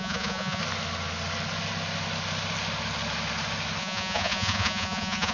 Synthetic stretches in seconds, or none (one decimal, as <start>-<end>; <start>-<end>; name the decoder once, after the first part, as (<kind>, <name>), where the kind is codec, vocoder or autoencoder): 0.0-0.6 (vocoder, Vocos); 3.8-5.3